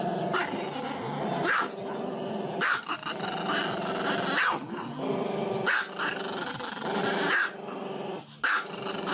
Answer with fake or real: real